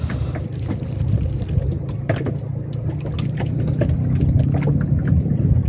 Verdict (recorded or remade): recorded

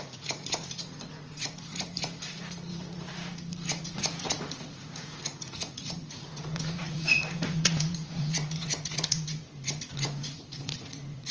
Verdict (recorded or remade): remade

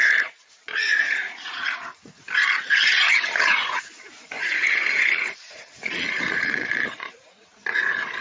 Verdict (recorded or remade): remade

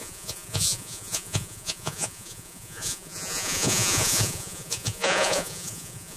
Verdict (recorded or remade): remade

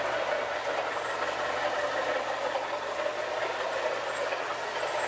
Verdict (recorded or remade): recorded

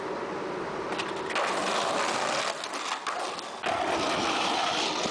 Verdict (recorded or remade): recorded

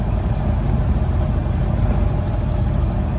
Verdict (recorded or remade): recorded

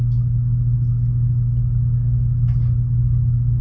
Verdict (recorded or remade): recorded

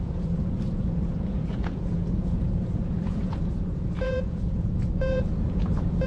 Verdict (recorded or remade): remade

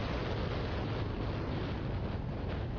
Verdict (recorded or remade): recorded